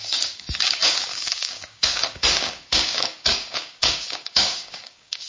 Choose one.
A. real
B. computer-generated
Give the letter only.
B